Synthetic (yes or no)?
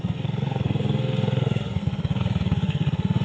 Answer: yes